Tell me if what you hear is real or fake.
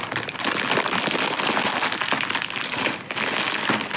real